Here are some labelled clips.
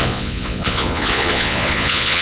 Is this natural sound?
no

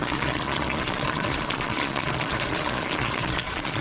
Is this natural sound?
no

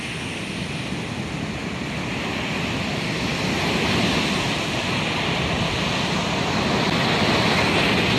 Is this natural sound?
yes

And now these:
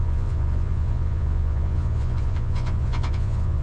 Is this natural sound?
no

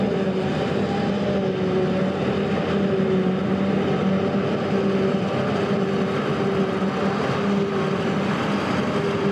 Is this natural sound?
yes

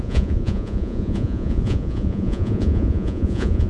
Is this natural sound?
no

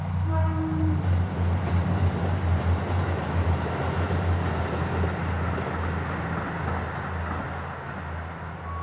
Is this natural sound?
yes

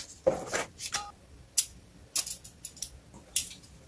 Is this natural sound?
yes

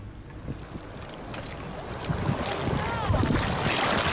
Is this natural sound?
yes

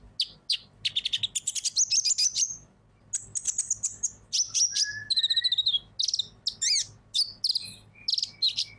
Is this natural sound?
yes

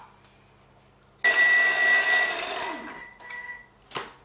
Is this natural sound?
yes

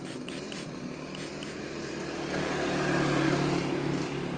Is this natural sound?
yes